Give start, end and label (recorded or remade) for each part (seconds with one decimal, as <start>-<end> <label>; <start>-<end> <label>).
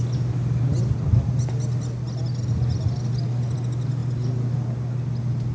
0.0-5.5 recorded